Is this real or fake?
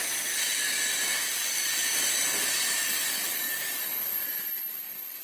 real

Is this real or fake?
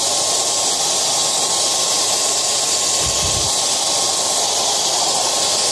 real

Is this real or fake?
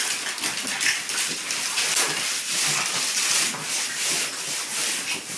real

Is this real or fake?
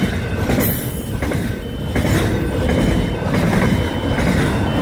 real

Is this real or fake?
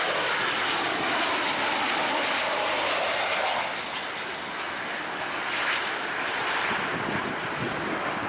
real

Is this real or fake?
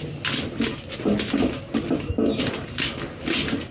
real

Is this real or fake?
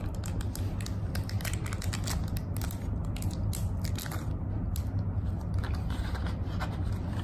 real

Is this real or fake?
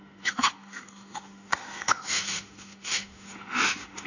fake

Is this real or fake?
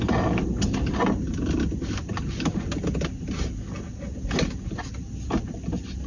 real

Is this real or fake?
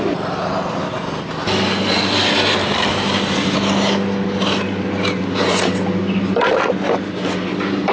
real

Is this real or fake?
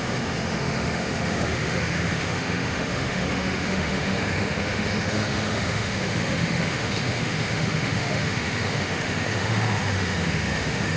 fake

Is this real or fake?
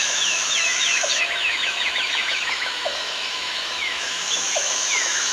fake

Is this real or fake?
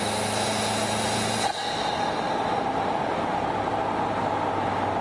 real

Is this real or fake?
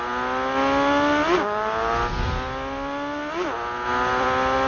real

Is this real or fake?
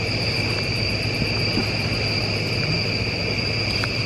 real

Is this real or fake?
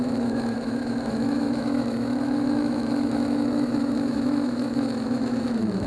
fake